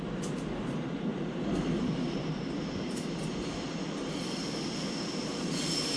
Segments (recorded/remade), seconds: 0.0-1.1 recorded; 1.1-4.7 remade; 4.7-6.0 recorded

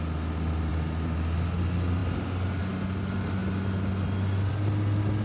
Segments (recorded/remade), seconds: 0.0-0.7 recorded; 0.7-1.6 remade; 1.6-5.2 recorded

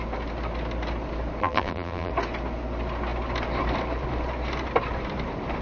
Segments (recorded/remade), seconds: 0.0-1.4 recorded; 1.4-2.1 remade; 2.1-5.6 recorded

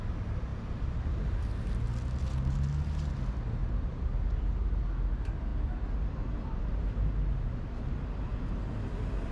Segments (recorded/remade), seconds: 0.0-0.5 recorded; 0.5-1.4 remade; 1.4-3.6 recorded; 3.6-4.8 remade; 4.8-9.3 recorded

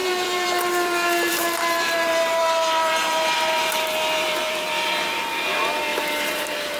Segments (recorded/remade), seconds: 0.0-6.8 remade

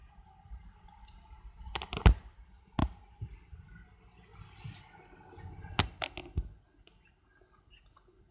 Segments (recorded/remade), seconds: 0.0-8.3 recorded

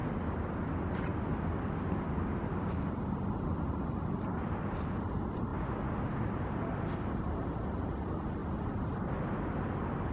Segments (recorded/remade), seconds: 0.0-0.6 remade; 0.6-10.1 recorded

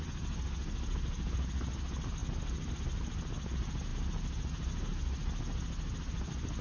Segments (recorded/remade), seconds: 0.0-6.6 recorded